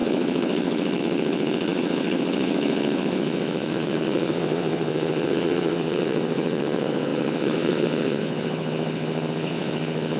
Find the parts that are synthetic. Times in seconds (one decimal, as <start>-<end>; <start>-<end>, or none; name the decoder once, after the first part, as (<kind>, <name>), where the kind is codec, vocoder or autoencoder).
0.0-10.2 (vocoder, WaveNeXt)